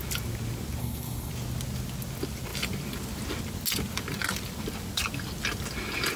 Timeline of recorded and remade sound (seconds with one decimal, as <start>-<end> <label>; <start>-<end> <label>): 0.0-0.8 recorded; 0.8-1.3 remade; 1.3-6.2 recorded